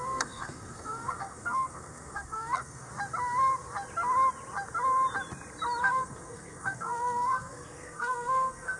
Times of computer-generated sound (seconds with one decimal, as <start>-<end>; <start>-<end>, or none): 0.0-2.9; 5.8-8.8